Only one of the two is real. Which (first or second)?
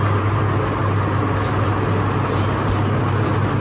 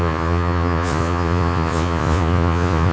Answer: first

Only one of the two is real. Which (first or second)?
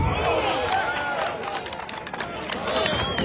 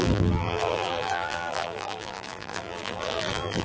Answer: first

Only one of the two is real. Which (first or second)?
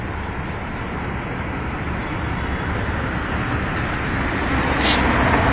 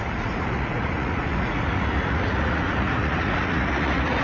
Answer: first